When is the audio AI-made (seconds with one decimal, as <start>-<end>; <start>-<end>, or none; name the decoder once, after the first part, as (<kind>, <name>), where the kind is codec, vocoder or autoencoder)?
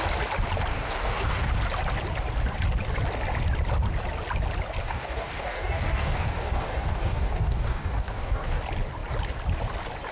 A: 0.7-1.5 (codec, DAC); 4.8-8.6